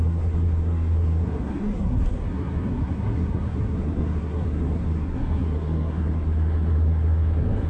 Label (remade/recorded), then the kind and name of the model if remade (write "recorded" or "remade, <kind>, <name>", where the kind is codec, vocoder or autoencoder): remade, codec, SNAC